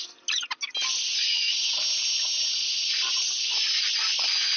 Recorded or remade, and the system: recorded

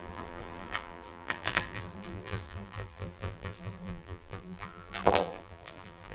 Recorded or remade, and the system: remade, vocoder, BigVGAN v2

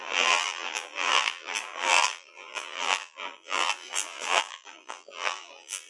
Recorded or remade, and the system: remade, vocoder, BigVGAN v2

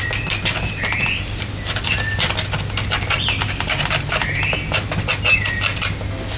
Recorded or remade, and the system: recorded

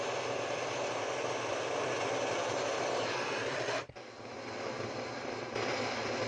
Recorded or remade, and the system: remade, vocoder, BigVGAN v2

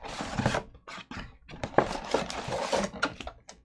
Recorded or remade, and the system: recorded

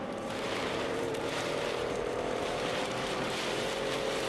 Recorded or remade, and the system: remade, vocoder, BigVGAN v2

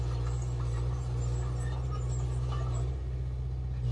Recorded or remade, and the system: recorded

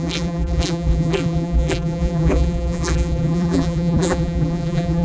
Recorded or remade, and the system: remade, vocoder, BigVGAN v2